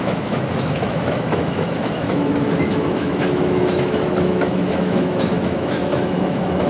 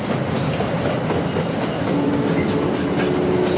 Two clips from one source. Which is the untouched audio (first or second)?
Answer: second